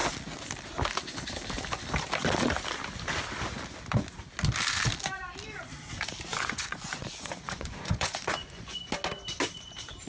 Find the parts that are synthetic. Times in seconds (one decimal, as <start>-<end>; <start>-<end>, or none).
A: 6.3-8.8